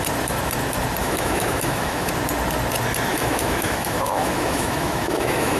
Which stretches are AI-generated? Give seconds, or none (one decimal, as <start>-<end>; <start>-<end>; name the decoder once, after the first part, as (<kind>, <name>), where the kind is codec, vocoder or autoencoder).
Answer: 1.0-2.1 (autoencoder, DAC-VAE); 3.1-5.6